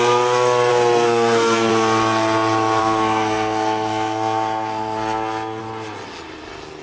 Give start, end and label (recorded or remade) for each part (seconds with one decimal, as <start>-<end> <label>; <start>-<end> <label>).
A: 0.0-0.7 recorded; 0.7-1.7 remade; 1.7-2.8 recorded; 2.8-5.6 remade; 5.6-6.8 recorded